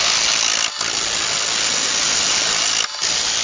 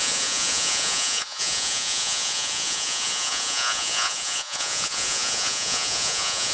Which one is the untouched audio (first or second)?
first